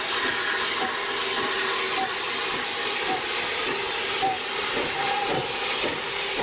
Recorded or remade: recorded